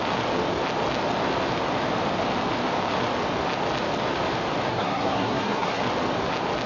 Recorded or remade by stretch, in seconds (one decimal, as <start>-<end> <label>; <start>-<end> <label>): 0.0-4.7 recorded; 4.7-5.8 remade; 5.8-6.7 recorded